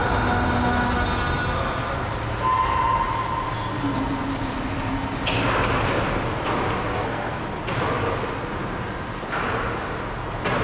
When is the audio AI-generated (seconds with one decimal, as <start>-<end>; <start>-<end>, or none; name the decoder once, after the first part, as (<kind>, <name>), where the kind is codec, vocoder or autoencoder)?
6.9-7.4 (codec, SNAC)